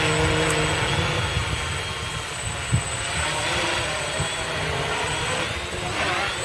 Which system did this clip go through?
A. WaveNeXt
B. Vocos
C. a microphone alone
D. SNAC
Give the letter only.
C